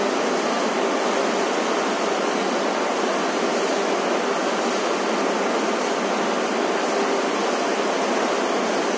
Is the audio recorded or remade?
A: recorded